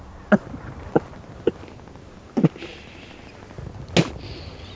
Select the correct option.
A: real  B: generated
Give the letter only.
A